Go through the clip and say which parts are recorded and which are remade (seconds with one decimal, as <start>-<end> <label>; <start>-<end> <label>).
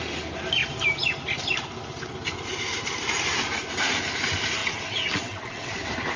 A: 0.0-4.6 recorded; 4.6-5.7 remade; 5.7-6.2 recorded